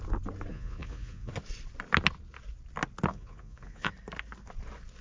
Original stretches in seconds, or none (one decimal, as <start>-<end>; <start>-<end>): 0.0-0.5; 1.3-3.1; 3.9-5.0